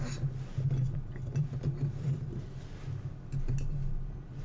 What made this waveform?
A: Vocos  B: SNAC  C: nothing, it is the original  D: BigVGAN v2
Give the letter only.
C